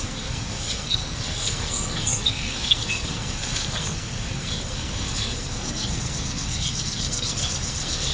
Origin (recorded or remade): remade